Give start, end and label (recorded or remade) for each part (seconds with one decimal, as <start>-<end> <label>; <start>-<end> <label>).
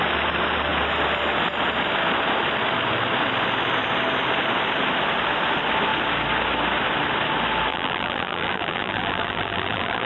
0.0-7.7 recorded; 7.7-10.1 remade